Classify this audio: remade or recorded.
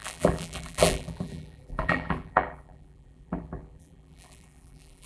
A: remade